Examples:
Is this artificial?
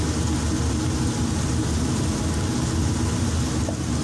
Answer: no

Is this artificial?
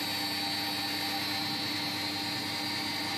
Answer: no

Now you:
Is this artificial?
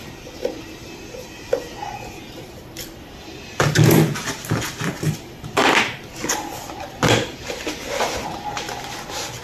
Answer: yes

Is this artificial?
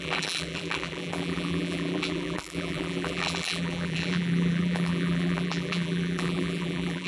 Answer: yes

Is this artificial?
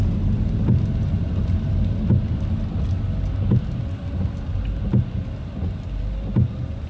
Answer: no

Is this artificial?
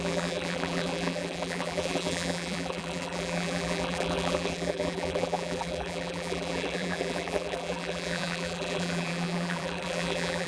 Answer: yes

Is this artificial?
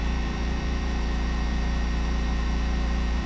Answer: yes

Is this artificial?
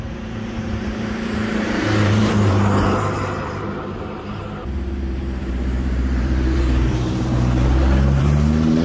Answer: yes